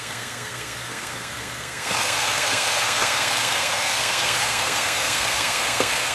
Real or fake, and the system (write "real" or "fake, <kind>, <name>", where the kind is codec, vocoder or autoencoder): fake, codec, SNAC